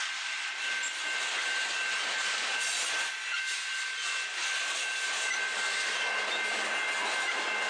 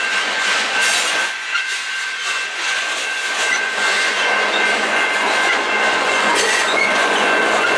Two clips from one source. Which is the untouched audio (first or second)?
first